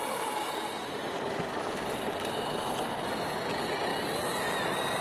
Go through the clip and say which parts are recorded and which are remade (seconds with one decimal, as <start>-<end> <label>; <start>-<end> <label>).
0.0-3.9 recorded; 3.9-4.4 remade; 4.4-5.0 recorded